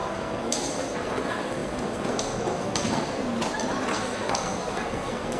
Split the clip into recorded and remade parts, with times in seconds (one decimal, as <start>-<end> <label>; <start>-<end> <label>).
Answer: 0.0-3.2 remade; 3.2-3.9 recorded; 3.9-5.4 remade